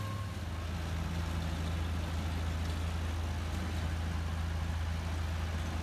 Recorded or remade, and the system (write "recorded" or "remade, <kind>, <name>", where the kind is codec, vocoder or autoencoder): recorded